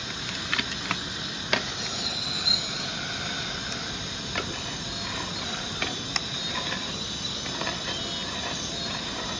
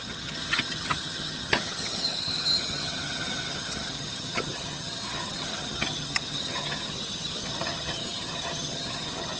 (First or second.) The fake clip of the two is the second